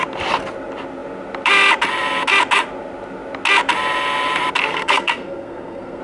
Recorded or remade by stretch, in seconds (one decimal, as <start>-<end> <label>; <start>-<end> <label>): 0.0-4.7 recorded; 4.7-6.0 remade